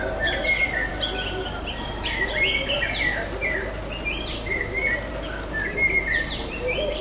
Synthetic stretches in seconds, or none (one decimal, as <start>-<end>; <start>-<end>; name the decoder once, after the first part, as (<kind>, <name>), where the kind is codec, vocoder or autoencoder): none